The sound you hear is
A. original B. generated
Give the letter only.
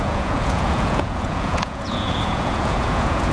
B